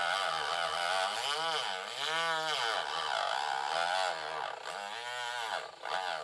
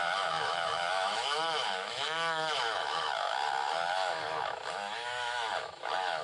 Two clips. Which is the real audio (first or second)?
first